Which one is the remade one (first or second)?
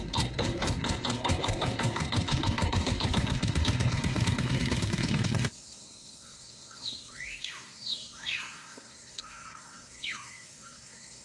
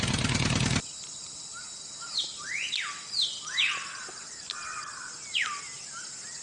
first